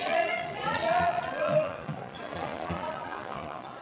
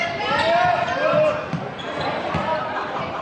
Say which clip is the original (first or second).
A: second